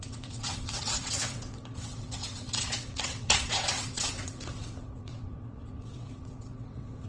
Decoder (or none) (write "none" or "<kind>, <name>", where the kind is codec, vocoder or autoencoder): vocoder, WaveNeXt